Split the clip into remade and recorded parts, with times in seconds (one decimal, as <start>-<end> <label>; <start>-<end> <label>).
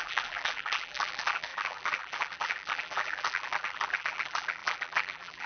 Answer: 0.0-5.5 remade